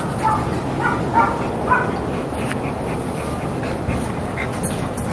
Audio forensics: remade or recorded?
recorded